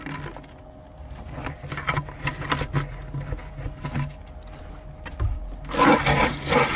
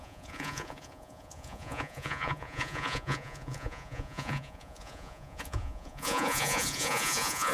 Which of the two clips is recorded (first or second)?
first